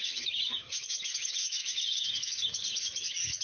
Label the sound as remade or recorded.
remade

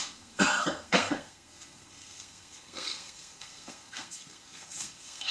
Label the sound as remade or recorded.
remade